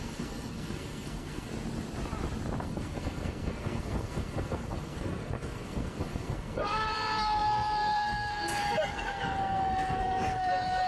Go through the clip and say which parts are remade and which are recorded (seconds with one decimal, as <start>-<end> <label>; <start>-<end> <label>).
0.0-1.5 remade; 1.5-2.6 recorded; 2.6-10.9 remade